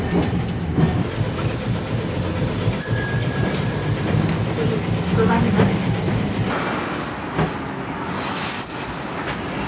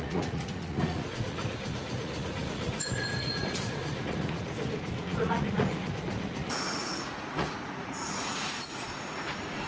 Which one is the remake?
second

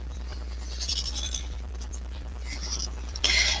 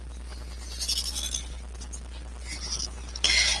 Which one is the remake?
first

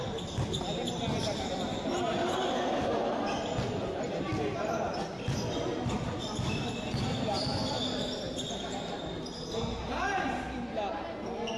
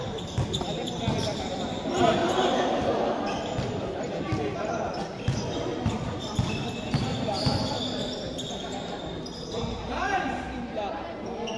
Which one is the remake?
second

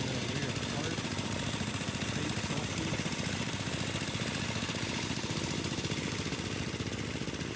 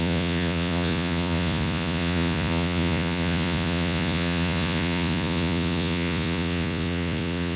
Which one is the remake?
second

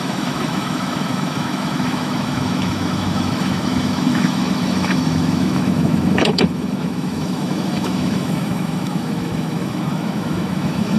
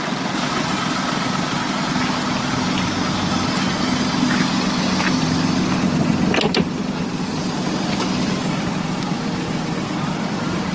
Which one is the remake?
first